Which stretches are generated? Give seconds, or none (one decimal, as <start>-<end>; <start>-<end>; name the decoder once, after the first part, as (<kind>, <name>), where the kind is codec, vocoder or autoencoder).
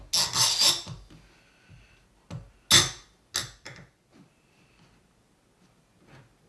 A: 3.4-4.1 (vocoder, BigVGAN v2)